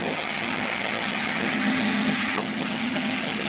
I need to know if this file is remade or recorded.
remade